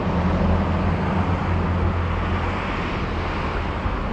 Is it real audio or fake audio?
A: real